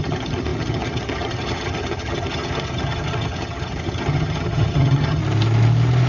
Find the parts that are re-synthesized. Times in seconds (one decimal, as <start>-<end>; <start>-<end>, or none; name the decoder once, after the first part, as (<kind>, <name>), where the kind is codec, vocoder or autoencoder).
0.0-5.2 (vocoder, HiFi-GAN)

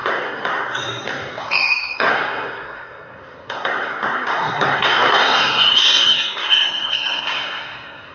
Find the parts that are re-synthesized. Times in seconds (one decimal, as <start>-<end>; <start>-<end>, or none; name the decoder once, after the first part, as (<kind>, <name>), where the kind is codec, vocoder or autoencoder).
0.0-8.1 (codec, SNAC)

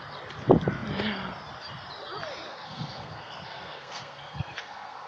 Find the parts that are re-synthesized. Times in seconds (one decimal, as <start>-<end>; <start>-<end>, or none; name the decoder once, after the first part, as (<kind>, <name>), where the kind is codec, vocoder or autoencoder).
2.5-5.1 (codec, SNAC)

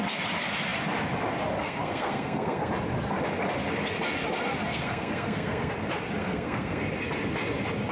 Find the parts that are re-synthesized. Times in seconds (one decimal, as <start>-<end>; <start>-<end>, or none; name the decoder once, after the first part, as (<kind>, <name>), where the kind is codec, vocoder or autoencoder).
1.6-2.7 (codec, SNAC); 4.7-5.7; 6.2-6.8

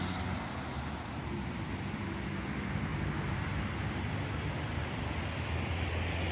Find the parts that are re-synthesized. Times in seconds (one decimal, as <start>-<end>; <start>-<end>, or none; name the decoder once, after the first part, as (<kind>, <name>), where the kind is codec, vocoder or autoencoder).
none

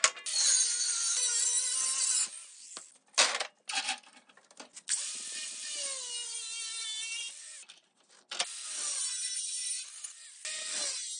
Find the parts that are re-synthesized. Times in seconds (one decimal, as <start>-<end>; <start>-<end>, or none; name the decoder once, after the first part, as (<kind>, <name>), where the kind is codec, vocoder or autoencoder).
none

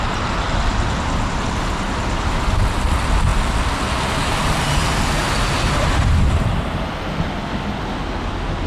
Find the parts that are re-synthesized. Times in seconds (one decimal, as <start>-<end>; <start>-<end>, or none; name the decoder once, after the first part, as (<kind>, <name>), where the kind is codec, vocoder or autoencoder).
none